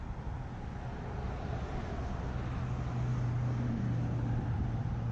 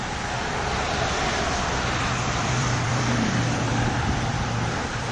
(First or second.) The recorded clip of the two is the first